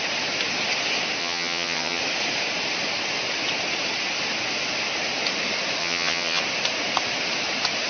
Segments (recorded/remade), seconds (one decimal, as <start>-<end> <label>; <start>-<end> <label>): 0.0-1.2 recorded; 1.2-2.0 remade; 2.0-5.8 recorded; 5.8-6.4 remade; 6.4-7.9 recorded